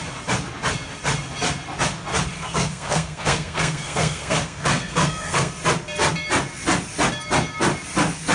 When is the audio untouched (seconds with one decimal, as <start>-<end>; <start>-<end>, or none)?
0.0-2.3; 5.5-8.3